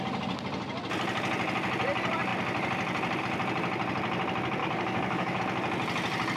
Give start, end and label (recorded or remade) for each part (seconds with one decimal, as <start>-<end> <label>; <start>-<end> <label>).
0.0-4.6 recorded; 4.6-5.4 remade; 5.4-6.4 recorded